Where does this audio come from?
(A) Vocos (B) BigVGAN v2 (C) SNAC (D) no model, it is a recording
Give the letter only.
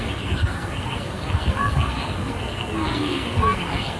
C